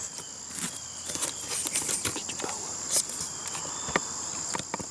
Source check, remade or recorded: recorded